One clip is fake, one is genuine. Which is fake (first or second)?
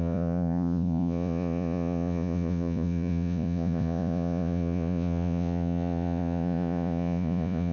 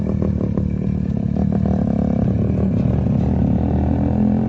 first